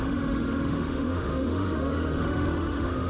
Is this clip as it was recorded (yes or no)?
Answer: no